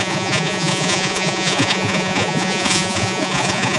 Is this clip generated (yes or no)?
yes